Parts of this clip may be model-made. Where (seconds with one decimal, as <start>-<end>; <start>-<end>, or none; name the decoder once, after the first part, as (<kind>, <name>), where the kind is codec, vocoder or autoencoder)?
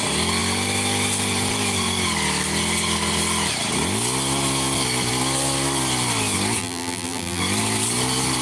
6.6-7.4 (vocoder, BigVGAN v2)